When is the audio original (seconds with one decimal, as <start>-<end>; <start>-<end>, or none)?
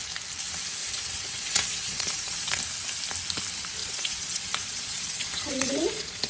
0.0-0.8; 2.6-3.8